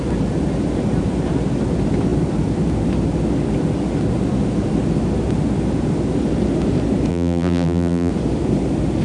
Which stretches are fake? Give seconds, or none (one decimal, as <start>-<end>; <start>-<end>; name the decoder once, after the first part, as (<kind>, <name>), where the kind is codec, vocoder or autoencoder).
7.1-8.1 (vocoder, BigVGAN v2)